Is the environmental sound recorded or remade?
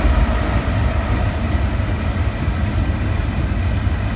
recorded